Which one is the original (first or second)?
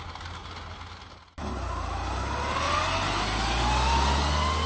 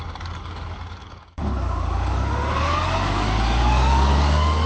first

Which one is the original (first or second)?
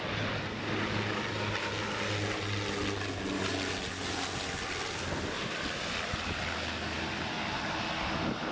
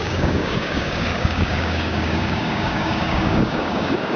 first